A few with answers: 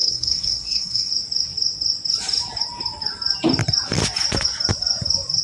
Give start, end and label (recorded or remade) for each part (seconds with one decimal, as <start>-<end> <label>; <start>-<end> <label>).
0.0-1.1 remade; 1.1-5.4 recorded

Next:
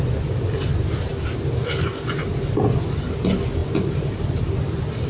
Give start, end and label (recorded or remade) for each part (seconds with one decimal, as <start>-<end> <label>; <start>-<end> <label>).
0.0-5.1 recorded

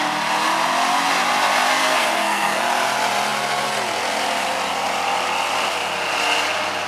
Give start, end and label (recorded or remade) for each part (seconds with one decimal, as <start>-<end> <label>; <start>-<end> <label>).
0.0-1.7 recorded; 1.7-2.6 remade; 2.6-6.9 recorded

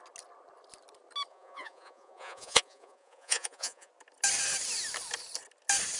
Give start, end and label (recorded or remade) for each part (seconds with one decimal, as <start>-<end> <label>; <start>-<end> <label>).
0.0-1.3 recorded; 1.3-3.9 remade; 3.9-6.0 recorded

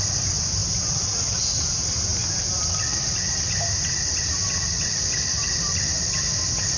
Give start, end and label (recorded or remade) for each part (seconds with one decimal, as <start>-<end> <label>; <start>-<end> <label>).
0.0-0.6 recorded; 0.6-1.5 remade; 1.5-2.1 recorded; 2.1-6.2 remade; 6.2-6.8 recorded